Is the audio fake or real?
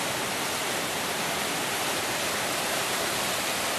fake